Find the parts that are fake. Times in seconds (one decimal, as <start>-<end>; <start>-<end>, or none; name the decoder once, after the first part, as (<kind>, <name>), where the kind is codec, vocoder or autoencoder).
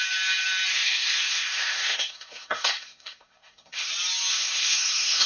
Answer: 0.7-3.9 (codec, SNAC); 4.3-5.3